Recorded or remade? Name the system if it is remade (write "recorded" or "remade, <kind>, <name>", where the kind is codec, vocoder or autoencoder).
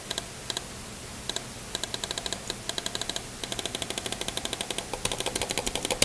recorded